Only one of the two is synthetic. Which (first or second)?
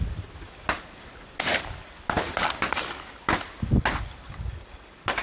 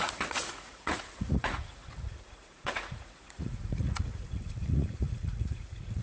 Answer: second